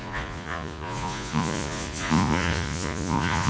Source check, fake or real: fake